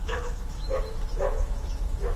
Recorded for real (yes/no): no